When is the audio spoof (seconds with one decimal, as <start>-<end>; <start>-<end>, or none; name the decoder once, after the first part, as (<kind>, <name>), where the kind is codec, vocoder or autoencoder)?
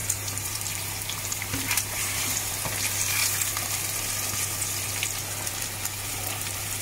0.0-2.5 (vocoder, BigVGAN v2); 6.1-6.8